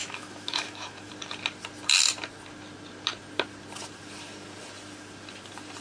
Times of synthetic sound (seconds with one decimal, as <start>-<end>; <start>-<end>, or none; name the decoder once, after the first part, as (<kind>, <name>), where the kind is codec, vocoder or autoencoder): 0.0-1.1 (autoencoder, DAC-VAE)